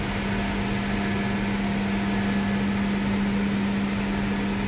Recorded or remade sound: recorded